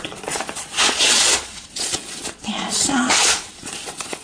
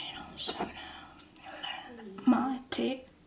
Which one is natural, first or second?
second